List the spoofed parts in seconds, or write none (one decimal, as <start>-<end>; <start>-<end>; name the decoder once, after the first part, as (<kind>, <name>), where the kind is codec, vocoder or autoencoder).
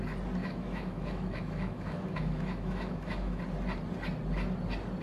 0.4-3.4 (autoencoder, DAC-VAE)